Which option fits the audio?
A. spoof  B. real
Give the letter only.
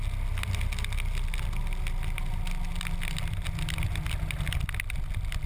B